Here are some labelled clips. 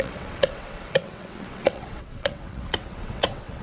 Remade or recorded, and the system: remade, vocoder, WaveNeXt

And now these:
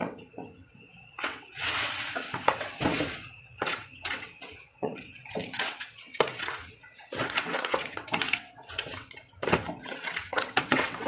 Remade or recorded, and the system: remade, vocoder, WaveNeXt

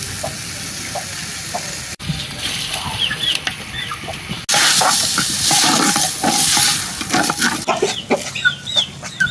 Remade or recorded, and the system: recorded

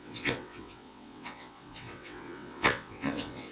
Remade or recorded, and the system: remade, vocoder, WaveNeXt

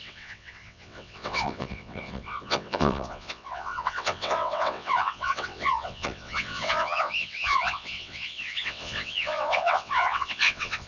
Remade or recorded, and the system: remade, vocoder, WaveNeXt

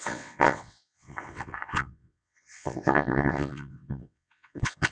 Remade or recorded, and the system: remade, vocoder, WaveNeXt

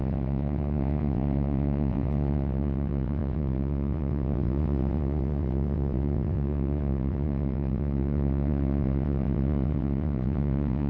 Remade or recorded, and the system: remade, vocoder, WaveNeXt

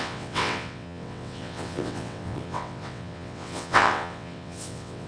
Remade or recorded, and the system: remade, vocoder, WaveNeXt